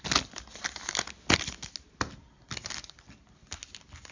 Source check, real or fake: real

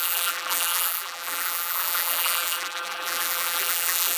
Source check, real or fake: fake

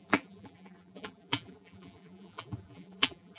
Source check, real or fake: fake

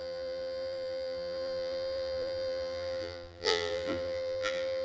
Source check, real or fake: fake